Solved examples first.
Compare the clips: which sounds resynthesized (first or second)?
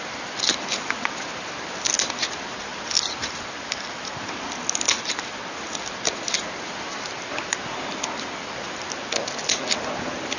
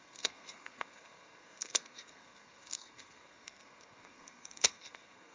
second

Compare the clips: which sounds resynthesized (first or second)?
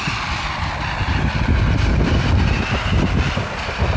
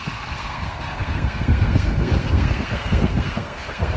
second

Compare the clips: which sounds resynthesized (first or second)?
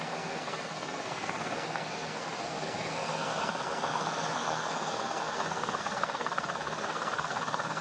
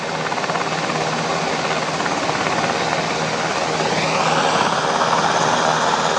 first